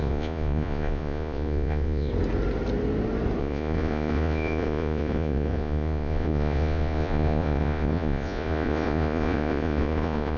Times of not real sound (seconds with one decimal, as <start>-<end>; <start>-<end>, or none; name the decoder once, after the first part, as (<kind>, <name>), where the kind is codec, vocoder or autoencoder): 0.0-2.1 (vocoder, Vocos); 3.4-10.4